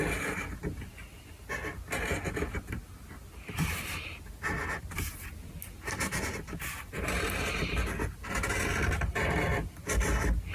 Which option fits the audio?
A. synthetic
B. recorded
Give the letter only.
B